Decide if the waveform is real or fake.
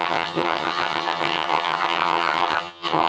fake